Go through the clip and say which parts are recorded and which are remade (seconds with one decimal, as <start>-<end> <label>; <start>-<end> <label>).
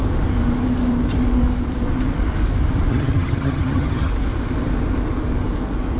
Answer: 0.0-2.9 recorded; 2.9-4.1 remade; 4.1-6.0 recorded